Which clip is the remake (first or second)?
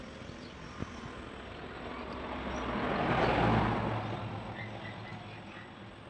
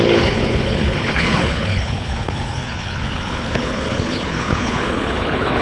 second